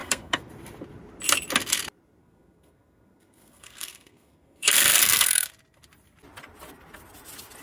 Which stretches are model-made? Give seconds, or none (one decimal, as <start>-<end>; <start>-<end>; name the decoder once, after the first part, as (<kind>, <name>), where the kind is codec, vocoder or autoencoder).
0.0-0.5 (codec, SNAC); 2.2-5.5